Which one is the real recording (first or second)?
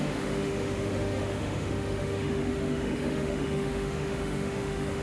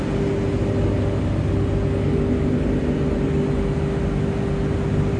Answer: second